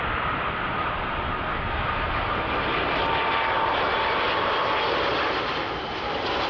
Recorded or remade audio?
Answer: recorded